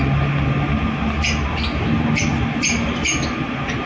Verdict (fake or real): real